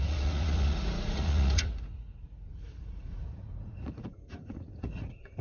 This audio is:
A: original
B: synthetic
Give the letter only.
B